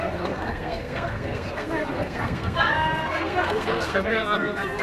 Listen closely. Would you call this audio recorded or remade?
remade